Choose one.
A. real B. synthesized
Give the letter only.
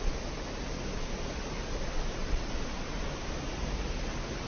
A